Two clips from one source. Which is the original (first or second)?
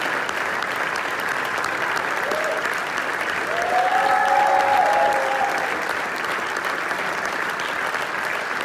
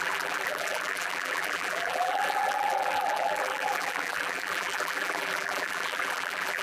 first